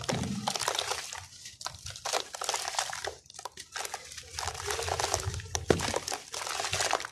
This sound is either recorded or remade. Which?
recorded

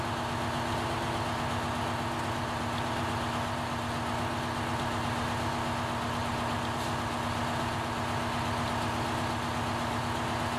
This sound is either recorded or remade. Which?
recorded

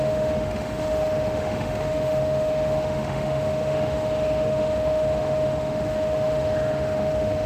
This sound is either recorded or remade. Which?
remade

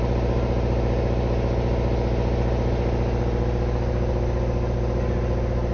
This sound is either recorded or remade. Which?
recorded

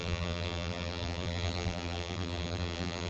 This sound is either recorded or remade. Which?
remade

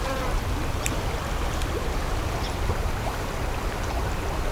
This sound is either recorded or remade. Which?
recorded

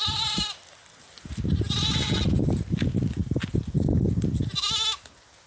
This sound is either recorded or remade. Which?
recorded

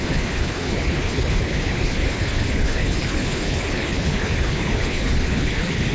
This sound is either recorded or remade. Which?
remade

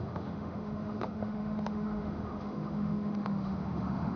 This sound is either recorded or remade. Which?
remade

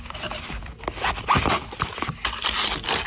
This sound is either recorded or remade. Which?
remade